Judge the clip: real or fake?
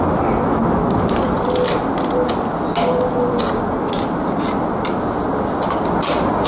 real